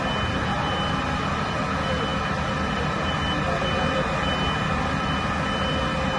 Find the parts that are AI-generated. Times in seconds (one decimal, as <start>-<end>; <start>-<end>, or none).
none